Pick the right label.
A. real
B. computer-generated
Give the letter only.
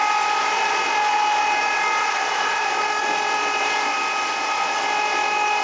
A